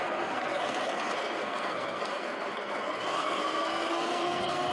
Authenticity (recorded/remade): remade